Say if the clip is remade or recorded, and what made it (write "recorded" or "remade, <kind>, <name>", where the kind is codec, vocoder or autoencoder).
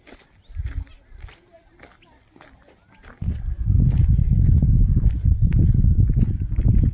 recorded